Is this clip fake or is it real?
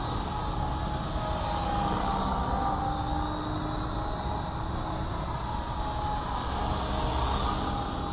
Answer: real